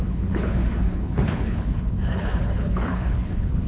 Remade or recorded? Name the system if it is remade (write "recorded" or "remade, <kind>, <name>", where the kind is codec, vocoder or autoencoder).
remade, codec, HILCodec